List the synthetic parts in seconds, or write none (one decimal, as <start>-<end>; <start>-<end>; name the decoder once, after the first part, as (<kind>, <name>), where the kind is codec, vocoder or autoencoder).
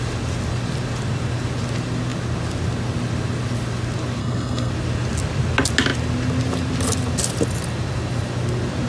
4.2-4.7 (codec, SNAC)